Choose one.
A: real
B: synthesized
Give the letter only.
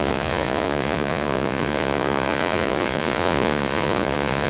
B